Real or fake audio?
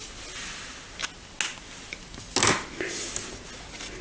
real